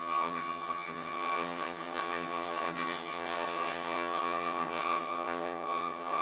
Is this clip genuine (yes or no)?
no